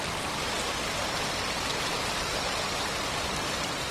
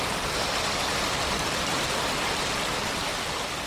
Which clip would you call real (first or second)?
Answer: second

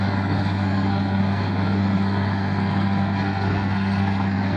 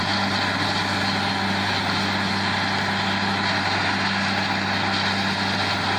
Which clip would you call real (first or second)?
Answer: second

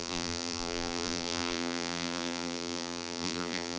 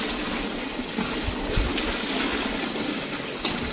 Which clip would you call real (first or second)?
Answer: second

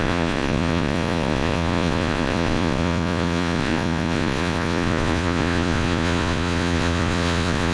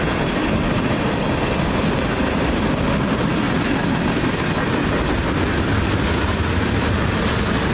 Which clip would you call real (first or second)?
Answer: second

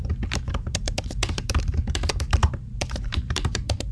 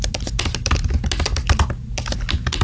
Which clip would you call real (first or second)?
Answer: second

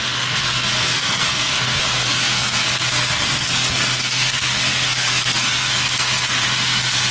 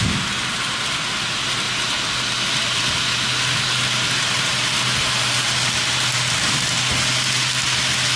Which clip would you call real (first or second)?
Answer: second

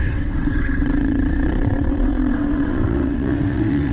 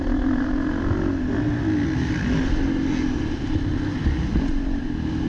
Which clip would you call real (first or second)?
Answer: second